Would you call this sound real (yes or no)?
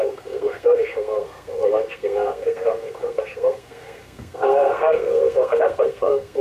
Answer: no